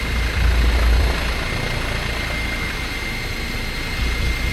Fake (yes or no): no